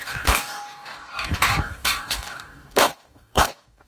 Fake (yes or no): yes